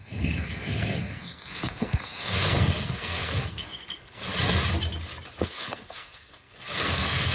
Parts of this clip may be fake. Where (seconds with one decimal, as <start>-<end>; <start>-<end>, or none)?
0.0-4.3; 5.4-7.3